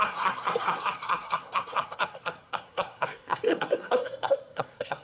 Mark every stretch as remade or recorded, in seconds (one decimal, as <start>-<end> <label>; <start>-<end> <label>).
0.0-5.0 remade